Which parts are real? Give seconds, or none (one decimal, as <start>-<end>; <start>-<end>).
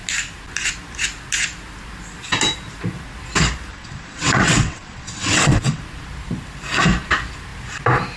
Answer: 0.0-3.7; 5.8-8.2